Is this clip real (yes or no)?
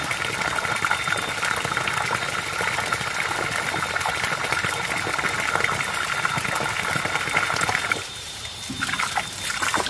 yes